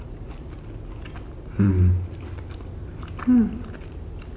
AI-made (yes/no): no